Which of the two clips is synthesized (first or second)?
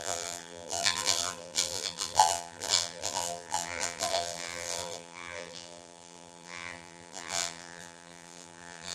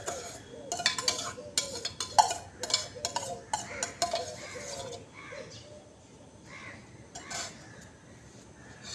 first